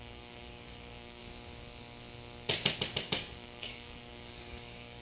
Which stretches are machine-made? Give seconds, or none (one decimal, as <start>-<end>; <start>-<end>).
0.0-1.2; 3.0-5.0